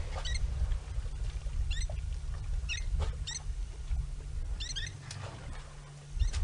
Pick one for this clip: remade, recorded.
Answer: recorded